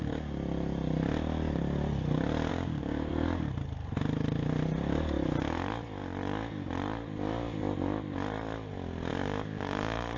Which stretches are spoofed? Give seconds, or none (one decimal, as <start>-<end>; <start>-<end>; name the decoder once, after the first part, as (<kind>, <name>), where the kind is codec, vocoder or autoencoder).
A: 2.5-3.1 (codec, DAC); 9.1-10.2